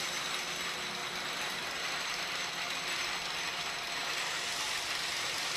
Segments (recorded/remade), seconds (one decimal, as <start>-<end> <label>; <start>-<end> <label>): 0.0-5.6 recorded